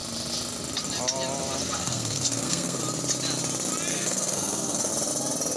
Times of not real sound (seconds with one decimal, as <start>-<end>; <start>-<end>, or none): 1.8-2.8; 3.9-4.9

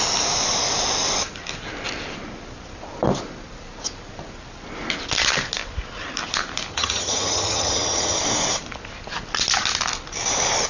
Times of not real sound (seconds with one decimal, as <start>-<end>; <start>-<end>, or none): 6.7-8.2